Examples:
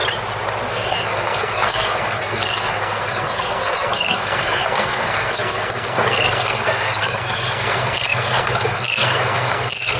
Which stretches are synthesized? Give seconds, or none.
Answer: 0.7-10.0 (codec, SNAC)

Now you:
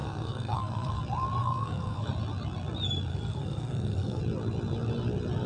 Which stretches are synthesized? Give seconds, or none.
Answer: 0.0-1.0 (codec, SNAC); 1.4-2.1; 3.1-4.2

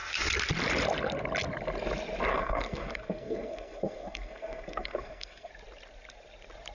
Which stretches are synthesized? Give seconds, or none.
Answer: 2.3-5.5 (codec, SNAC)